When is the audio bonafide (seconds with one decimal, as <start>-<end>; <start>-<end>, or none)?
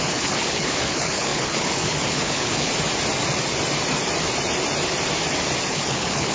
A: 2.7-5.7